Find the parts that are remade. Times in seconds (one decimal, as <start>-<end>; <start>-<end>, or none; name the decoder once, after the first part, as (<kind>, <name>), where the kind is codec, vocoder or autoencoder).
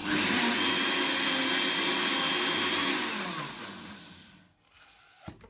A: none